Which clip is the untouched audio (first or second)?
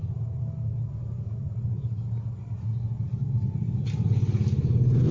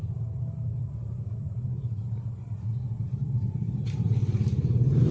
first